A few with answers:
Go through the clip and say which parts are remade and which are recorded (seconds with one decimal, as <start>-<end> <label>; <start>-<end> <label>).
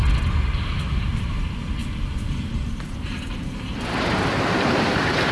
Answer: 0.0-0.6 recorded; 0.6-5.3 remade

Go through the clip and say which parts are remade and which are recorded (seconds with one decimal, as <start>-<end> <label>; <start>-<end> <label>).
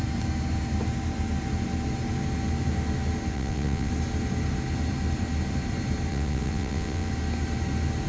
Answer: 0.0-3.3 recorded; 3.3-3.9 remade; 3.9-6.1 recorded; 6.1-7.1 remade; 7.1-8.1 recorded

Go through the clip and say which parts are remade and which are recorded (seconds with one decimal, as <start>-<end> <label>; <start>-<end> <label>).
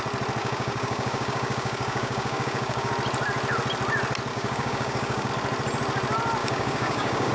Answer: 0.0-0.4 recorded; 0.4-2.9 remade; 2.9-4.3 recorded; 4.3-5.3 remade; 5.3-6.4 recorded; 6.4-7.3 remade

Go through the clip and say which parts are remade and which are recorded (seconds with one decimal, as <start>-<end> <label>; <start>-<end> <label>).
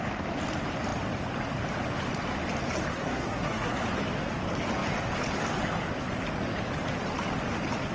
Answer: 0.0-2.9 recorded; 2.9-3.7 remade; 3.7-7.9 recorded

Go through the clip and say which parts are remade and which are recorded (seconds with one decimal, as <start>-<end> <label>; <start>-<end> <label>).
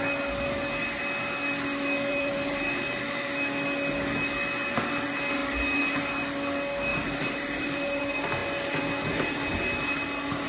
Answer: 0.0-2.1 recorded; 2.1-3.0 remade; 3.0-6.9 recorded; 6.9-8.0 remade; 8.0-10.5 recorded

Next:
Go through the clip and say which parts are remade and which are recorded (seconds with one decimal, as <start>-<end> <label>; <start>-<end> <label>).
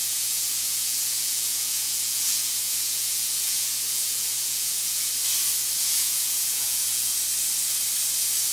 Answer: 0.0-5.1 remade; 5.1-5.8 recorded; 5.8-7.1 remade; 7.1-8.5 recorded